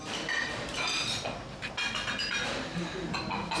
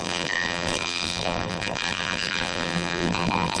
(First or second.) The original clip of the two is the first